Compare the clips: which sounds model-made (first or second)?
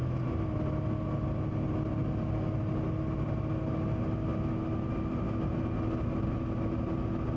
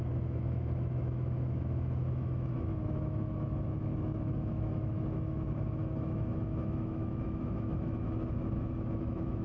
second